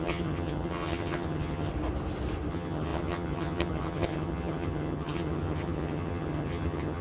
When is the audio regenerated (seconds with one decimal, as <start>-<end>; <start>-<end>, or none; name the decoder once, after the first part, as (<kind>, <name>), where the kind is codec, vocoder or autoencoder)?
0.0-1.7 (vocoder, HiFi-GAN); 2.5-7.0